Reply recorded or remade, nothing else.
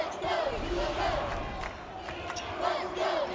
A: recorded